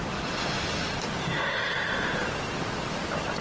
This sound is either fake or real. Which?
real